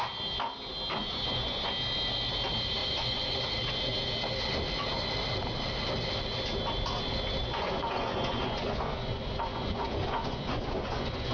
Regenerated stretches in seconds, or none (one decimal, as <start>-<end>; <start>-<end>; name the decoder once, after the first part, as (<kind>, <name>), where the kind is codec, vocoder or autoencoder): 1.0-1.7 (vocoder, Vocos); 2.8-3.4; 7.4-11.3

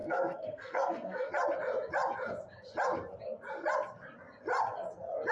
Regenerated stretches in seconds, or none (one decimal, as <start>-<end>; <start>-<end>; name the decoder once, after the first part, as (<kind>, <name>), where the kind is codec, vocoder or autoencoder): 0.0-1.3 (codec, SNAC)